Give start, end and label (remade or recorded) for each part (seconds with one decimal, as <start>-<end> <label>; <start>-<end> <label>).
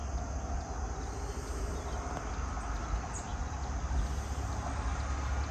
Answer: 0.0-5.5 recorded